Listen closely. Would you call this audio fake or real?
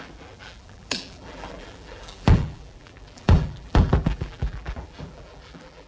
fake